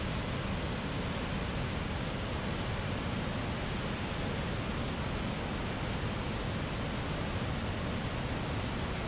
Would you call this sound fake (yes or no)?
no